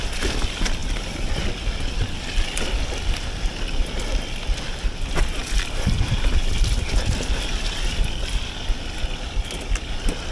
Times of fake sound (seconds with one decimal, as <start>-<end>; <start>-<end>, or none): none

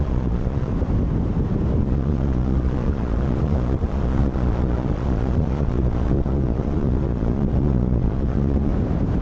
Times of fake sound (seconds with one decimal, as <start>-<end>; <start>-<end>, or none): 0.0-0.7; 1.8-8.7

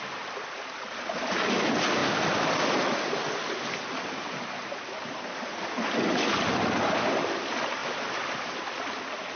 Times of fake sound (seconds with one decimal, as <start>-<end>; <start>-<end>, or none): none

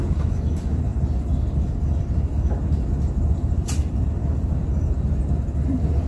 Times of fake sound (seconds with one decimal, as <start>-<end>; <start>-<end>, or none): none

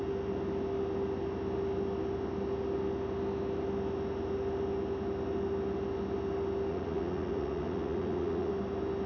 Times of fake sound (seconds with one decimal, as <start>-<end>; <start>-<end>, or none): 6.7-8.5